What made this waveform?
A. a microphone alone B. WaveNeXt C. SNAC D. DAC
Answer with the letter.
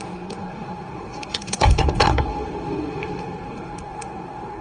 C